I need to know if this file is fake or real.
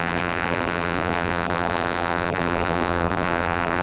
fake